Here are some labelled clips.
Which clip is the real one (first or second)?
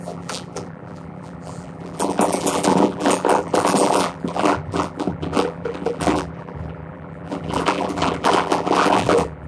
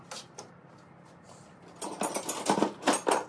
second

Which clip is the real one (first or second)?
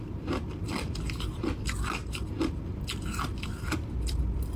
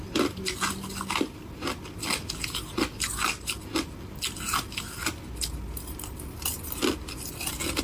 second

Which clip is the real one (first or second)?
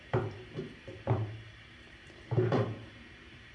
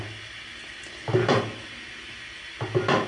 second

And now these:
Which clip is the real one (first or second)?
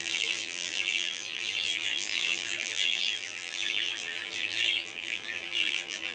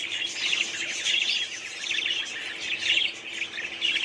second